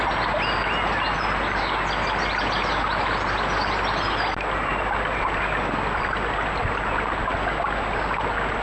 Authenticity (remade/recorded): recorded